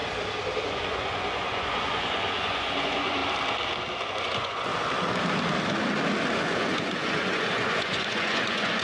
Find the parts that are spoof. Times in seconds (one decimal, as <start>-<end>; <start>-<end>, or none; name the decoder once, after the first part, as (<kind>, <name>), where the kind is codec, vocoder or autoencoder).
0.6-3.2 (vocoder, Vocos); 4.1-4.7; 6.4-8.8

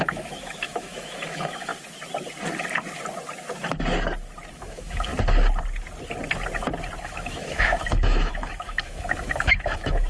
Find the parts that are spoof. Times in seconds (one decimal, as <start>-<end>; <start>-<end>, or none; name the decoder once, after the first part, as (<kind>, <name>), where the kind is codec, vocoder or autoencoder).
0.0-1.7 (autoencoder, DAC-VAE); 4.5-5.1; 7.0-10.1

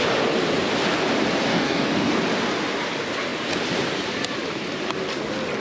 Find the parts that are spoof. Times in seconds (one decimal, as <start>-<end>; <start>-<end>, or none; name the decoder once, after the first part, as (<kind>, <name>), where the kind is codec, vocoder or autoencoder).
1.5-2.2 (codec, DAC)

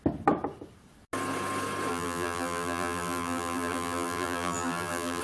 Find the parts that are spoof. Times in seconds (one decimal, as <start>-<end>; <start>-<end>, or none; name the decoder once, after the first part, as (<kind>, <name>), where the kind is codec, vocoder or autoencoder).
1.9-5.2 (vocoder, BigVGAN v2)

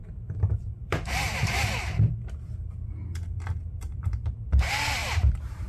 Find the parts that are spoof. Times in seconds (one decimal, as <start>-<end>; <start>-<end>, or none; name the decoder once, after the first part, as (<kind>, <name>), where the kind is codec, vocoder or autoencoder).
0.0-1.7 (vocoder, BigVGAN v2); 3.6-4.3; 5.0-5.7

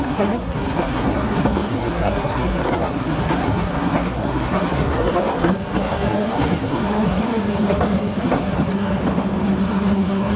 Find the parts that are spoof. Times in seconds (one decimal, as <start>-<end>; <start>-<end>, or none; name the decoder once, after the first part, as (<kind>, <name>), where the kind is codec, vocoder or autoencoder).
0.0-9.0 (codec, SNAC); 9.6-10.4

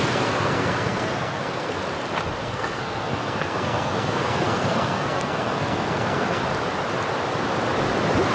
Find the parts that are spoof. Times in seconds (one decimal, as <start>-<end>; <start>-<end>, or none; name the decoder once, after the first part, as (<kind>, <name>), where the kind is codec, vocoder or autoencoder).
0.0-1.8 (codec, SNAC); 2.4-6.5